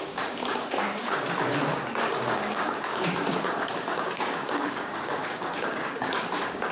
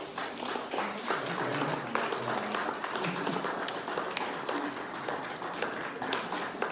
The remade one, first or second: first